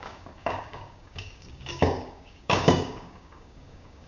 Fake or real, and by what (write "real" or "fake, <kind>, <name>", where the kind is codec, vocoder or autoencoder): fake, codec, DAC